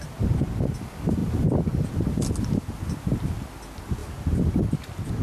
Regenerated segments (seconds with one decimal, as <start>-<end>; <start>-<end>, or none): none